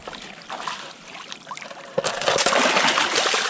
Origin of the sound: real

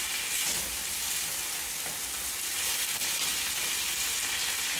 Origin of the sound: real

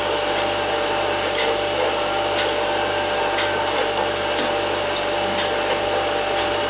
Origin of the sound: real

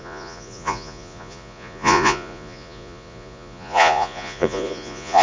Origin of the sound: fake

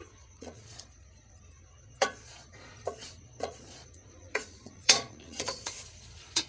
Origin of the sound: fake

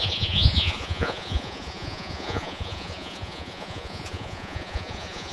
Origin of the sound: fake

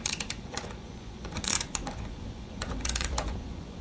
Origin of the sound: fake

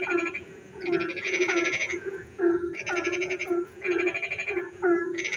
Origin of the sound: fake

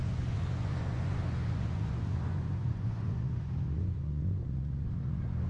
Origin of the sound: fake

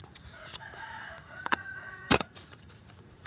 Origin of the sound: fake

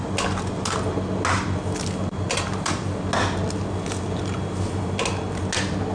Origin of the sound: real